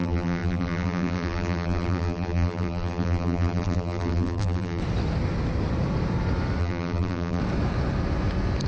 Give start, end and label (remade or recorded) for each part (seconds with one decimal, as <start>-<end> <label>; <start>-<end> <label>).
0.0-4.8 remade; 4.8-6.6 recorded; 6.6-7.4 remade; 7.4-8.7 recorded